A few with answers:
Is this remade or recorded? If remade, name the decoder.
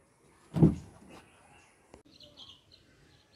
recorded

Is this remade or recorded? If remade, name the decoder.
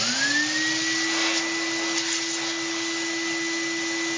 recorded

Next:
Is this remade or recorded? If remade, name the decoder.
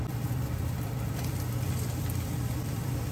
remade, vocoder, BigVGAN v2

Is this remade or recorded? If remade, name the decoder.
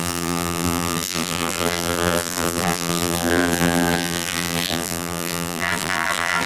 remade, vocoder, BigVGAN v2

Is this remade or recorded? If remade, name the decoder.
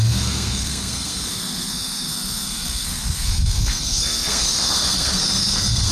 remade, codec, SNAC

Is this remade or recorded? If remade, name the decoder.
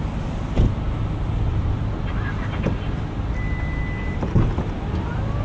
recorded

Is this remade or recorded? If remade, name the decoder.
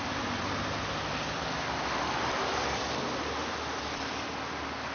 remade, vocoder, BigVGAN v2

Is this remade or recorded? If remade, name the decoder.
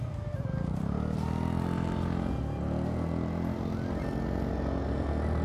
recorded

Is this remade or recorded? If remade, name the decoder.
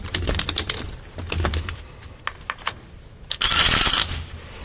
recorded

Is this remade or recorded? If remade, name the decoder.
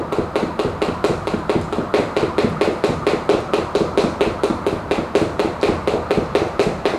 recorded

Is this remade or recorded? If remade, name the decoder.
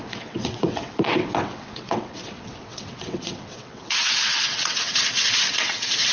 remade, vocoder, WaveNeXt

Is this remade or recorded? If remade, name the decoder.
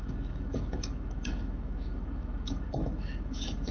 remade, autoencoder, DAC-VAE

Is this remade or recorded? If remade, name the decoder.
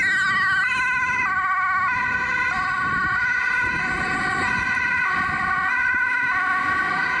recorded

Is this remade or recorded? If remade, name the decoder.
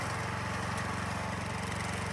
recorded